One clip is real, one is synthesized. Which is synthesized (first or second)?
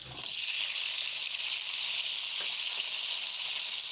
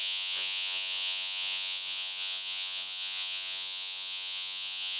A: second